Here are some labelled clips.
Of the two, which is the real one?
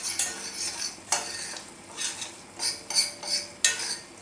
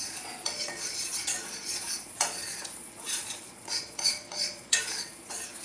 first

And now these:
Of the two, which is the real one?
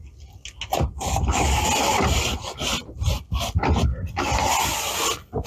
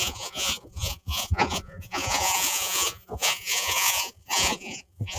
first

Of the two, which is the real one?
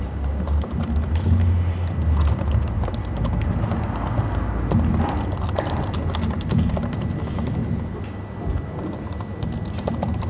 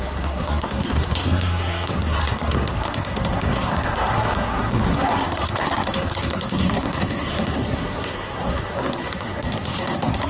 first